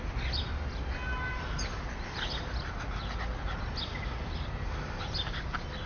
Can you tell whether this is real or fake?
real